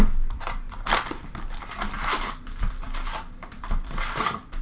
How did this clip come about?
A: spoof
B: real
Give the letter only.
A